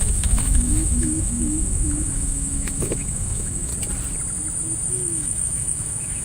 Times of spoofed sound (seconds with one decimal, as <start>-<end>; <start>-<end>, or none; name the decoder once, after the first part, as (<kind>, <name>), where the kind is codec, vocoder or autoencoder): 0.0-3.7 (autoencoder, DAC-VAE); 4.9-6.2